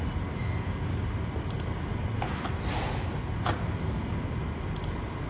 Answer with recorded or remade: recorded